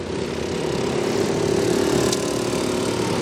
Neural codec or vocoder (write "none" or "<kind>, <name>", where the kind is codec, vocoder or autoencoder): none